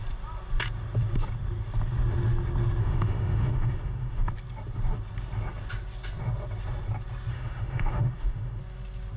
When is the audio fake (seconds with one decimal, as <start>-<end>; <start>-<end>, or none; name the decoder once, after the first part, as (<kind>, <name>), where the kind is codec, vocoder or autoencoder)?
2.8-4.3 (autoencoder, DAC-VAE); 7.3-8.6